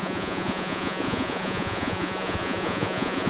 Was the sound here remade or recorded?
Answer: remade